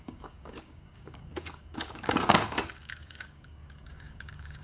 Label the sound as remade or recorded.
remade